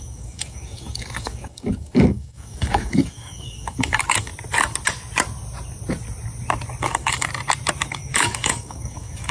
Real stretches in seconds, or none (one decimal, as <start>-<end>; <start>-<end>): 4.3-6.8; 7.3-7.9